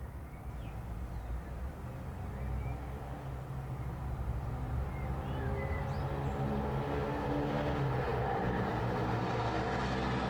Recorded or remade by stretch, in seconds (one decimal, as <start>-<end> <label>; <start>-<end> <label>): 0.0-8.1 recorded; 8.1-8.7 remade; 8.7-10.3 recorded